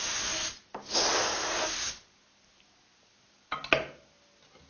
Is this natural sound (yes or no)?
yes